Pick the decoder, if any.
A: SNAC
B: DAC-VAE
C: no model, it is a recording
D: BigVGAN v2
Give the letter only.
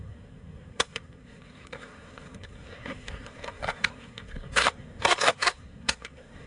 A